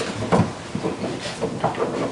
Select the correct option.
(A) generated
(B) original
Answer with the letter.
B